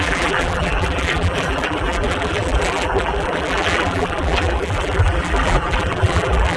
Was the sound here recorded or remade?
remade